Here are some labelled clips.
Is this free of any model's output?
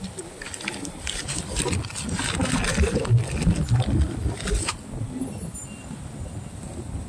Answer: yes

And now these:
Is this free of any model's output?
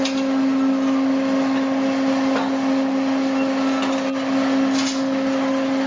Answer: yes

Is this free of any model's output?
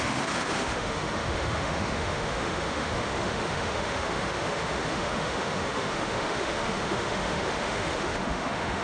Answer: no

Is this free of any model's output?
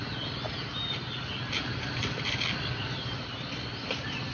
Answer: yes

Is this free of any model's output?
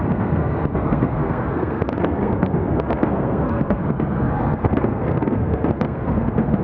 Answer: no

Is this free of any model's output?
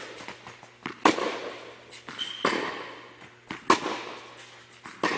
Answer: yes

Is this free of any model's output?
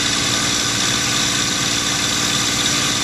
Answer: yes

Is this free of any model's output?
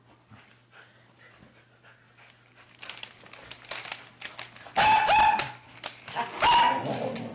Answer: yes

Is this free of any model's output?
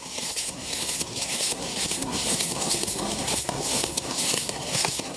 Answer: no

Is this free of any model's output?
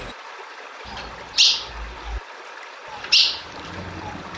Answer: yes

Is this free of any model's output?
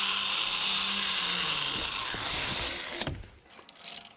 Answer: yes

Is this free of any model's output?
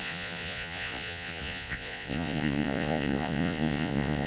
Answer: no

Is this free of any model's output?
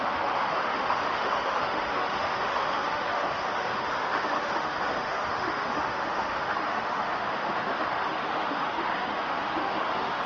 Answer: no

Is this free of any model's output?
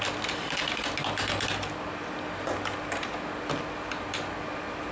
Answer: yes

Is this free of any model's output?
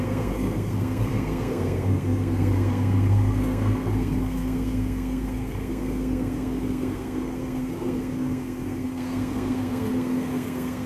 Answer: no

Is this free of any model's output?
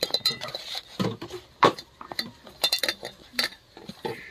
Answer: no